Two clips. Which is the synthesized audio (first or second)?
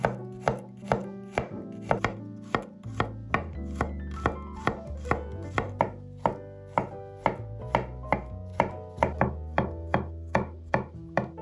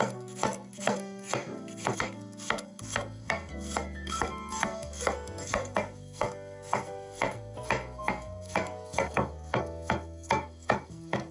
second